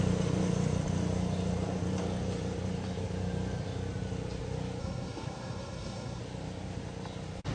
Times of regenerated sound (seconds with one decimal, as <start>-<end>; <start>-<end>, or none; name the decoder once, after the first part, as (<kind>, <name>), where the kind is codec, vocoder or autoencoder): 4.8-6.2 (codec, SNAC)